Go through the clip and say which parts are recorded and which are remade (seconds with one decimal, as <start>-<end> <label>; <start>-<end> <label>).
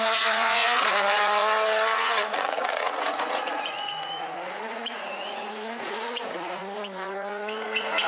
0.0-8.1 remade